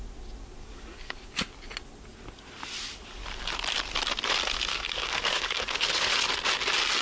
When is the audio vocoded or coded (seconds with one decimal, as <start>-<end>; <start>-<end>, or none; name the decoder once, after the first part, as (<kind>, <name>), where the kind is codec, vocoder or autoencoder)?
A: 0.6-1.3 (codec, DAC); 4.7-6.1